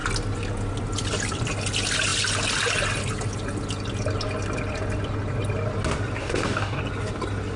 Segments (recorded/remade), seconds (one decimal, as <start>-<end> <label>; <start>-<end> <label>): 0.0-6.2 recorded; 6.2-6.8 remade; 6.8-7.6 recorded